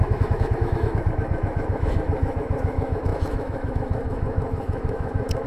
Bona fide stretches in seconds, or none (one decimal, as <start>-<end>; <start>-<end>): none